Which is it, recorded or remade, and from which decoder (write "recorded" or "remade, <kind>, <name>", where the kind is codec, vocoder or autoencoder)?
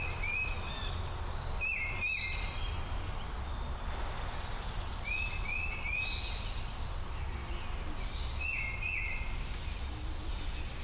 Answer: recorded